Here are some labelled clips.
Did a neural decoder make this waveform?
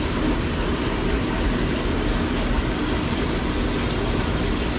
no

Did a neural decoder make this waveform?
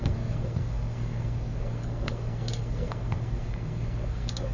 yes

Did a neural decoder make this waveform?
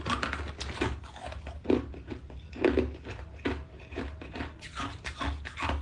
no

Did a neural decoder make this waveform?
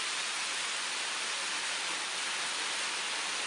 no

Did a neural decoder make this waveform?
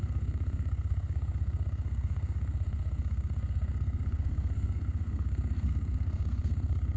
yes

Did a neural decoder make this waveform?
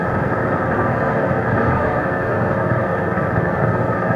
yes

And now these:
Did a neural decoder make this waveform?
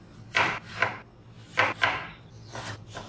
no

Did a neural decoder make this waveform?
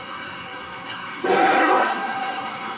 yes